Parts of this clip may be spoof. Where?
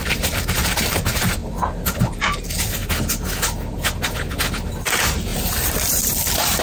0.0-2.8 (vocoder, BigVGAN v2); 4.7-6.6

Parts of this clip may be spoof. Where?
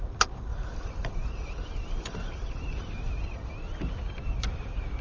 0.5-3.5 (vocoder, BigVGAN v2)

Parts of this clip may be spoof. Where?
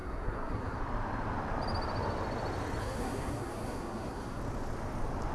0.0-0.8 (codec, SNAC); 2.8-4.4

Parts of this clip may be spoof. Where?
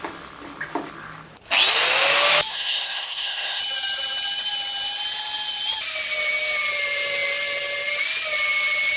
2.5-3.6 (codec, SNAC)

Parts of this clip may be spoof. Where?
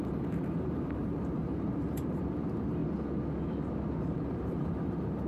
0.0-2.8 (vocoder, BigVGAN v2); 4.0-5.3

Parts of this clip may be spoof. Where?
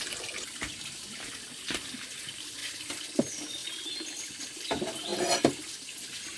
2.6-3.2 (vocoder, BigVGAN v2)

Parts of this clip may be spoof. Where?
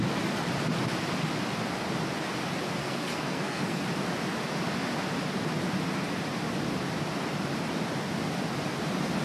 2.8-3.8 (codec, SNAC)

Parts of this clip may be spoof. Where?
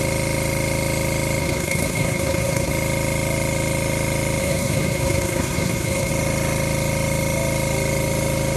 1.4-2.7 (codec, SNAC); 4.4-6.1